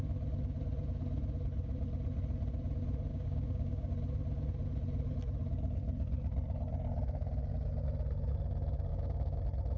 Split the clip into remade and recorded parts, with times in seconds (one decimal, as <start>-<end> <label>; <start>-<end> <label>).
0.0-3.1 recorded; 3.1-3.9 remade; 3.9-8.9 recorded; 8.9-9.4 remade; 9.4-9.8 recorded